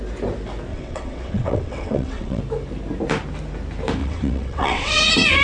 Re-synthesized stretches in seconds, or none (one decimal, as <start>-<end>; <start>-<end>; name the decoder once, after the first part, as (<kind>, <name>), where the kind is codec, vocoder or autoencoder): 0.7-2.4 (vocoder, WaveNeXt); 4.0-5.0